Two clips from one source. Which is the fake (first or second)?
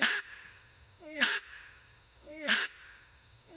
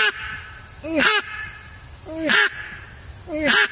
first